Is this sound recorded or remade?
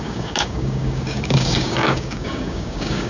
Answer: remade